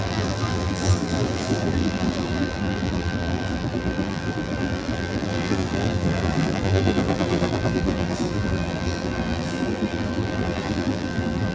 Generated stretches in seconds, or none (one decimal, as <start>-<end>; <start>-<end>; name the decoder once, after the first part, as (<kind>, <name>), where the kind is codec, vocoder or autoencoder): 0.0-11.5 (vocoder, BigVGAN v2)